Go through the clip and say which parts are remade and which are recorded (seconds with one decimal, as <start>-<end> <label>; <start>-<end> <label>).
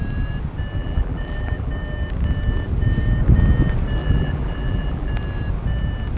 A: 0.0-0.8 recorded; 0.8-1.7 remade; 1.7-4.0 recorded; 4.0-5.1 remade; 5.1-6.2 recorded